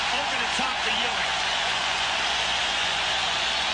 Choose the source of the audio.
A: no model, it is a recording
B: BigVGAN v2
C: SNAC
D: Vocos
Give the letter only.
D